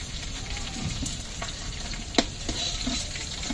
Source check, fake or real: fake